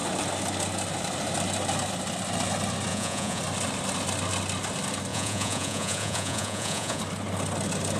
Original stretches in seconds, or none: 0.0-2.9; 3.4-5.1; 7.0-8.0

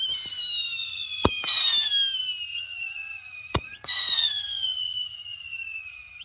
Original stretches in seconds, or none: 0.0-0.8; 1.3-2.5

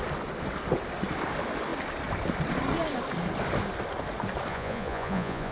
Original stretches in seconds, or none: 0.0-4.5

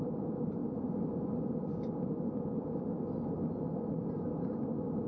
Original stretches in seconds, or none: 0.0-5.1

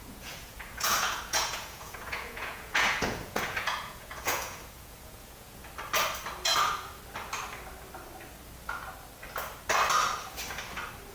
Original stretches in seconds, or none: 5.6-6.6; 7.0-11.1

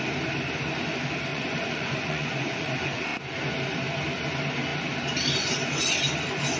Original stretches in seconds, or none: 0.0-1.3; 3.2-6.6

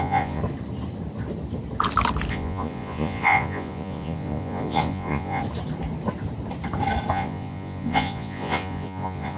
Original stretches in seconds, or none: 0.4-2.3; 5.4-7.1

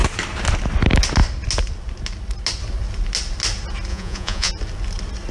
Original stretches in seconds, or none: 0.0-3.9; 4.5-5.3